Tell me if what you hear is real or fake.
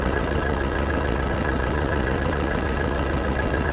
fake